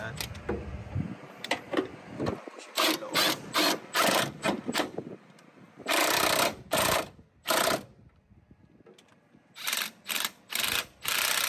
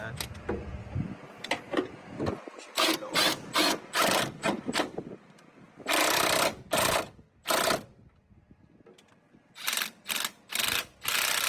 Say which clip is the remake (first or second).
first